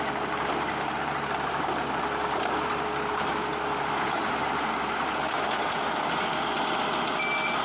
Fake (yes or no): no